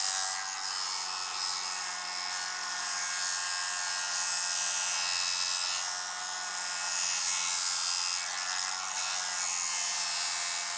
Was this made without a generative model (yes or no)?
yes